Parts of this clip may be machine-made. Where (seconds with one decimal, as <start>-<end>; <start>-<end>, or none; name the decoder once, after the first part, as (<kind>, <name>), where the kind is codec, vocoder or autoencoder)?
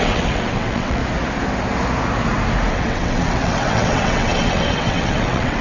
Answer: 0.0-1.0 (vocoder, WaveNeXt); 2.7-5.6